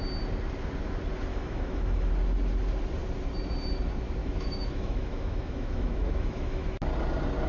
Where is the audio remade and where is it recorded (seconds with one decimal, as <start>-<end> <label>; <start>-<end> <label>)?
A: 0.0-1.3 recorded; 1.3-2.1 remade; 2.1-4.2 recorded; 4.2-6.8 remade; 6.8-7.5 recorded